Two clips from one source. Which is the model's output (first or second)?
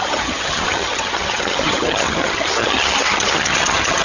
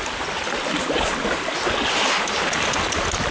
first